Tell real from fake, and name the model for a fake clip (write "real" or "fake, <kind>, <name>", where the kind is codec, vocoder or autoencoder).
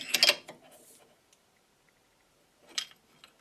real